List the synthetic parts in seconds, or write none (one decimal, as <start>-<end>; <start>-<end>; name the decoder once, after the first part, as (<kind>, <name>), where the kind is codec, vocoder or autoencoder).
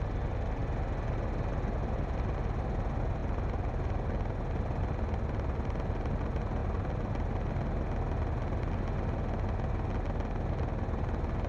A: none